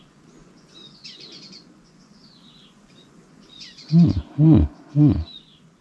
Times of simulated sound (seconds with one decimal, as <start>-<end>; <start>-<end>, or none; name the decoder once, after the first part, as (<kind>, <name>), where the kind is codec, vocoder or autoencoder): 0.0-5.8 (vocoder, Vocos)